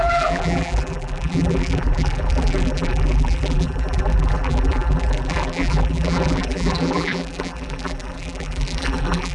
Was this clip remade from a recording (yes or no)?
yes